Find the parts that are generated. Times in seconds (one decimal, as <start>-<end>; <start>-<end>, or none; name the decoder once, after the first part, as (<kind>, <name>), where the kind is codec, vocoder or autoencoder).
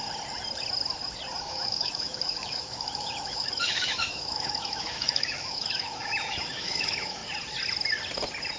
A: 1.4-7.2 (autoencoder, DAC-VAE)